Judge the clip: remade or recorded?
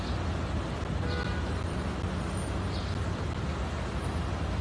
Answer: recorded